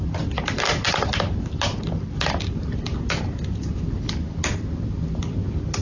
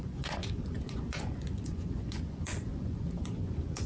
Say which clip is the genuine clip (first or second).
first